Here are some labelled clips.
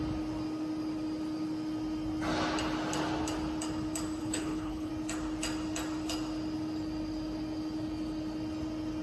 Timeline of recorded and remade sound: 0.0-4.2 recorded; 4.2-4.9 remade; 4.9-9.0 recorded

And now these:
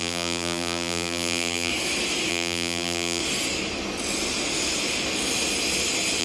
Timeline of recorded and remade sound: 0.0-1.7 remade; 1.7-2.3 recorded; 2.3-3.2 remade; 3.2-6.2 recorded